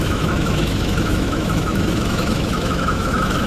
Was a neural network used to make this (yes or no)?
yes